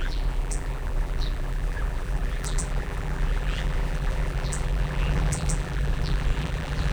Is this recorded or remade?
remade